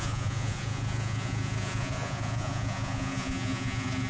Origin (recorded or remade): remade